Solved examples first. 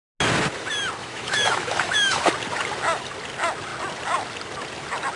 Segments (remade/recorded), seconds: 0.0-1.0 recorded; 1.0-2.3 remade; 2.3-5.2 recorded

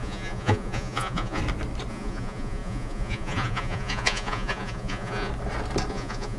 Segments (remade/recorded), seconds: 0.0-1.4 remade; 1.4-1.9 recorded; 1.9-5.3 remade; 5.3-5.9 recorded; 5.9-6.4 remade

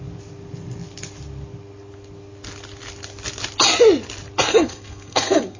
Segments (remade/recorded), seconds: 0.0-4.5 recorded; 4.5-5.6 remade

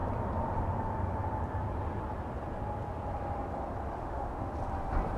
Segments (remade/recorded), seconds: 0.0-4.0 recorded; 4.0-4.5 remade; 4.5-5.2 recorded

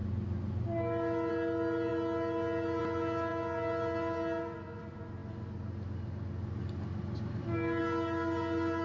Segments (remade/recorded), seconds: 0.0-8.8 recorded

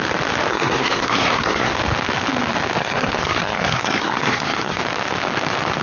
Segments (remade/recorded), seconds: 0.0-0.5 recorded; 0.5-1.7 remade; 1.7-2.8 recorded; 2.8-4.8 remade; 4.8-5.8 recorded

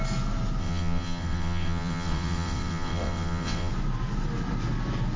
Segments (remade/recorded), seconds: 0.0-0.6 recorded; 0.6-3.7 remade; 3.7-5.2 recorded

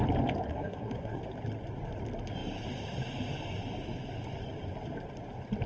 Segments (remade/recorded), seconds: 0.0-0.5 recorded; 0.5-1.2 remade; 1.2-5.7 recorded